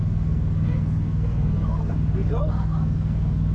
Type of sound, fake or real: fake